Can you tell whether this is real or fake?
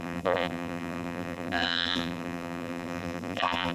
fake